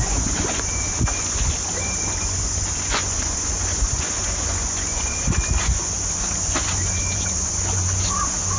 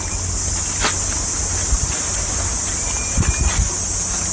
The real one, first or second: second